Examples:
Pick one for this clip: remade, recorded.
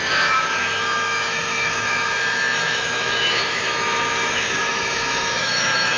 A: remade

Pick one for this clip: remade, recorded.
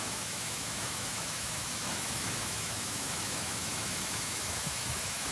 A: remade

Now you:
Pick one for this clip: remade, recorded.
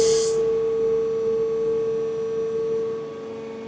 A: recorded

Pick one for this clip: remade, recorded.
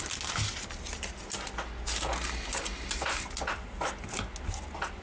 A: recorded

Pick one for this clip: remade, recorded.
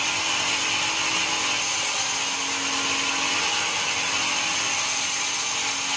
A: recorded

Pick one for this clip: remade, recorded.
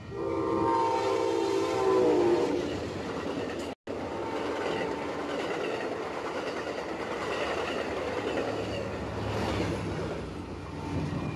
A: recorded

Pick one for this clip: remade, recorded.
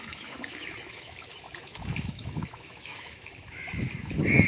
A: remade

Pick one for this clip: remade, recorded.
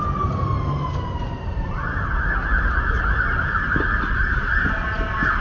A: recorded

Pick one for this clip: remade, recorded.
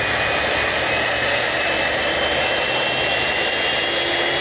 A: recorded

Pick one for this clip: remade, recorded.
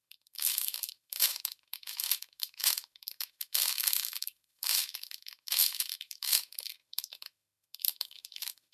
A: remade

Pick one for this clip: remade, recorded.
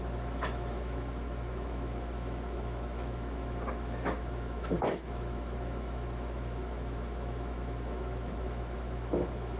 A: remade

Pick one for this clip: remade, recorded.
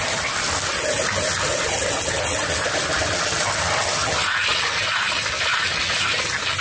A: recorded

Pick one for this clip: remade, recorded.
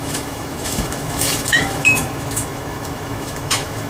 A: remade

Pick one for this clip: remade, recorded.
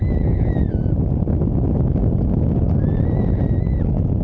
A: recorded